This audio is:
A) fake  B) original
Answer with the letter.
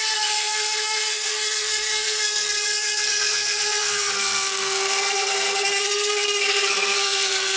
A